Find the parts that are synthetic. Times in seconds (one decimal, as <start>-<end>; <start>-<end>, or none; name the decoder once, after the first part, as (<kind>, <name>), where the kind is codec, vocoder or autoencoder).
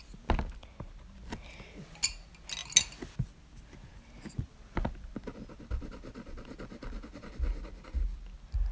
none